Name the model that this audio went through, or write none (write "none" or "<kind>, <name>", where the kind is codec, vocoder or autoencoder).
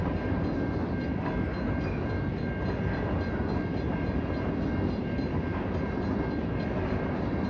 none